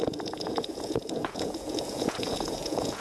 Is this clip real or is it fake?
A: fake